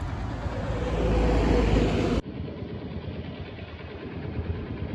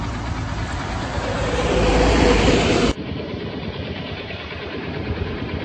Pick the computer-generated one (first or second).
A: second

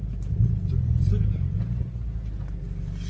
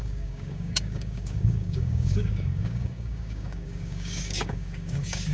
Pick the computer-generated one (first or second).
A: second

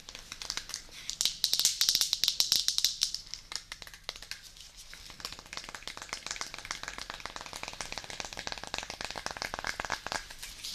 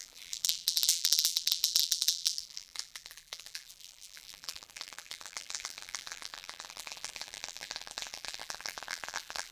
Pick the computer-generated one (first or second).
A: second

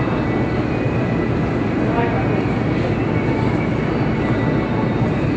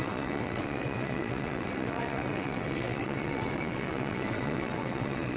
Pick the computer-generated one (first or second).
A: second